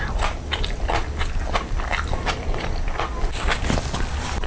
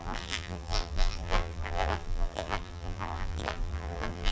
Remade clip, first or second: second